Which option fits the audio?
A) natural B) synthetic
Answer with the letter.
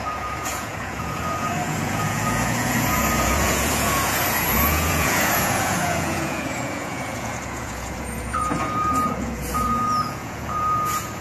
B